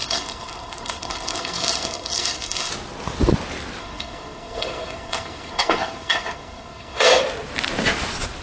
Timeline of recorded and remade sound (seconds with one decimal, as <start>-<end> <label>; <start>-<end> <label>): 0.0-2.7 remade; 2.7-3.8 recorded; 3.8-7.2 remade; 7.2-8.4 recorded